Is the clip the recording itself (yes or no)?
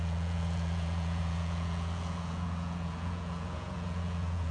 no